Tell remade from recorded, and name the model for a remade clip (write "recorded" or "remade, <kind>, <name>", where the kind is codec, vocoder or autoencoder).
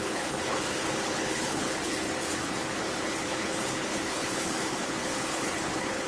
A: remade, codec, HILCodec